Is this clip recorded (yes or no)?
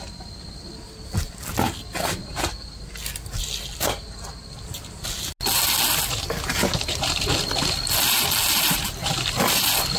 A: yes